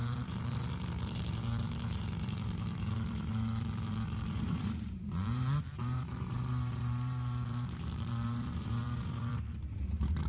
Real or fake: fake